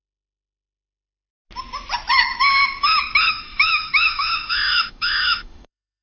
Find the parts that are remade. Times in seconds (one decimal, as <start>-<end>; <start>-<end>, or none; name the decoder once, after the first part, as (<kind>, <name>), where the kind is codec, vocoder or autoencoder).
0.0-1.3 (autoencoder, DAC-VAE); 3.3-6.0